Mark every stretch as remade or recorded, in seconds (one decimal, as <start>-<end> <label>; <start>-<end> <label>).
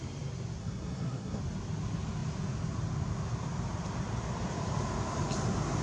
0.0-0.6 recorded; 0.6-1.4 remade; 1.4-5.8 recorded